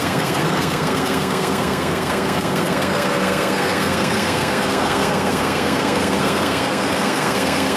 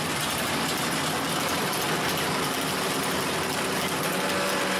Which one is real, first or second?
second